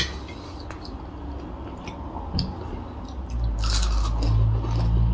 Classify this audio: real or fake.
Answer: real